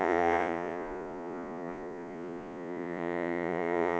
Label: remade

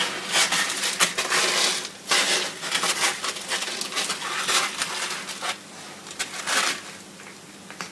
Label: recorded